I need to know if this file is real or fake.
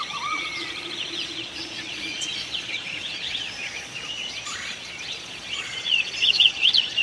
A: fake